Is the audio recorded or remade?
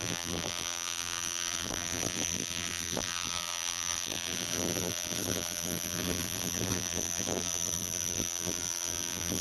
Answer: remade